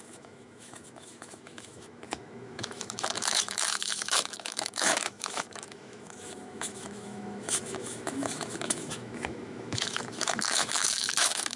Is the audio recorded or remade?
remade